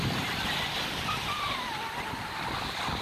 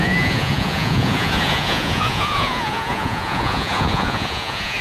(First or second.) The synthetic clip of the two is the second